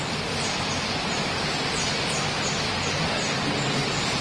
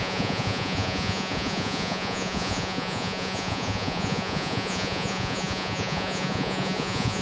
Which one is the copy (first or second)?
second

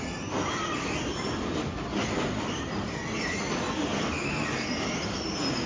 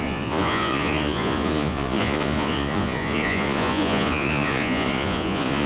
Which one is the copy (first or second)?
second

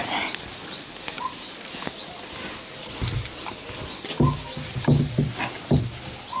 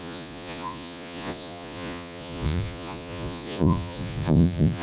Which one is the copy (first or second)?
second